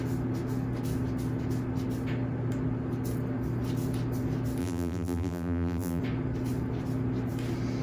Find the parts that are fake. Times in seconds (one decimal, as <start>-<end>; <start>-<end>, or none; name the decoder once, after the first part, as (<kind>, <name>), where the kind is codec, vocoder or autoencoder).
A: 4.6-6.0 (vocoder, BigVGAN v2)